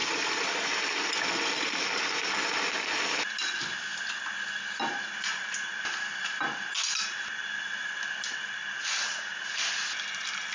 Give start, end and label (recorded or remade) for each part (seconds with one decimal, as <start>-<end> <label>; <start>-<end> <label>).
0.0-0.8 remade; 0.8-3.9 recorded; 3.9-4.5 remade; 4.5-10.5 recorded